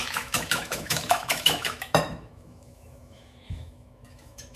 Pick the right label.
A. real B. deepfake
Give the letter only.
B